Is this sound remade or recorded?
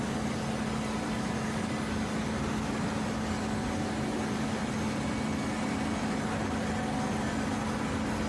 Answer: recorded